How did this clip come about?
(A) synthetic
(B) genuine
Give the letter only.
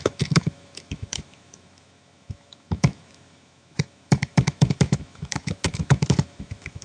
A